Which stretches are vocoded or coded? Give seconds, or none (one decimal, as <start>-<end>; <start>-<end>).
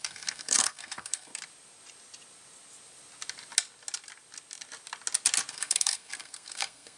0.0-1.3; 5.5-7.0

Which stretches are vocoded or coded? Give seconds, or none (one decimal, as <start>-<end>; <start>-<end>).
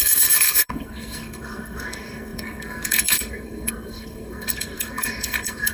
0.0-5.7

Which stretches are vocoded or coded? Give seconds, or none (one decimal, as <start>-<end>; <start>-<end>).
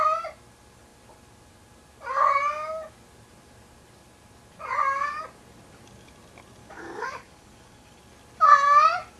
6.6-8.0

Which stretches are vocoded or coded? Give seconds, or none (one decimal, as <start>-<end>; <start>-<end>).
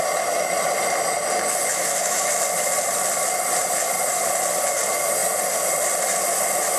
1.7-2.3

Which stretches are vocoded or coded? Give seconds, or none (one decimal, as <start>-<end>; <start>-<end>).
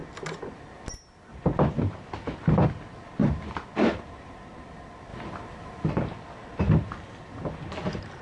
none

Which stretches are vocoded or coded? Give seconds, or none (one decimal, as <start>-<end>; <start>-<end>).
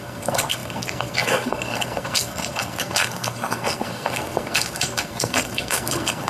0.0-6.3